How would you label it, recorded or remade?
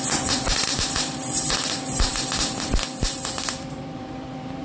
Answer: remade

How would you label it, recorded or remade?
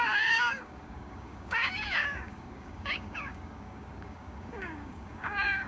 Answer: remade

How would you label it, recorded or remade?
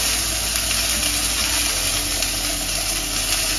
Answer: recorded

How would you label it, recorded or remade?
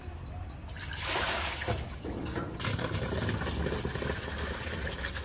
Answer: recorded